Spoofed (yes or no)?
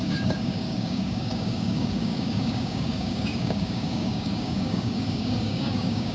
yes